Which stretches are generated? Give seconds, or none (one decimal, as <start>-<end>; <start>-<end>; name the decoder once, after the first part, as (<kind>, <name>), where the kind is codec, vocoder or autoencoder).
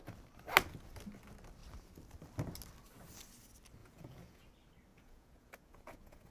3.8-4.5 (vocoder, Vocos); 4.9-6.3